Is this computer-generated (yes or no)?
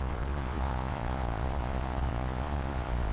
yes